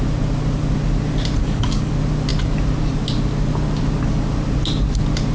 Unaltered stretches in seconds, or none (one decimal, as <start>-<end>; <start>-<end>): 0.0-1.4; 1.9-5.3